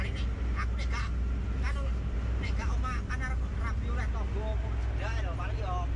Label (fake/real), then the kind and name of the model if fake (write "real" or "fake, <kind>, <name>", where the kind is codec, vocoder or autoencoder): real